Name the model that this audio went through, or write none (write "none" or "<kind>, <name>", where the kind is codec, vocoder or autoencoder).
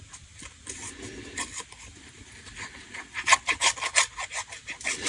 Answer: none